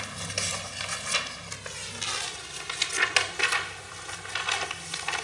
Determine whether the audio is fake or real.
real